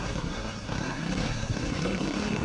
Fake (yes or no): yes